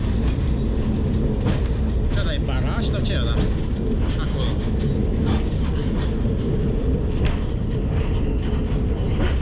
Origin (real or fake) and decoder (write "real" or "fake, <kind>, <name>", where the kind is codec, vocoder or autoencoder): real